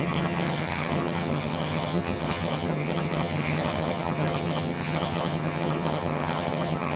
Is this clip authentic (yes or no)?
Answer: no